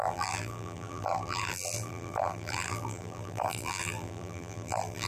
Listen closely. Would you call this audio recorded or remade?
remade